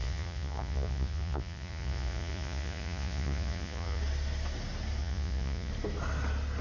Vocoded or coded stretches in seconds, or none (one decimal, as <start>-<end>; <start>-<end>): 0.0-4.0; 5.0-5.7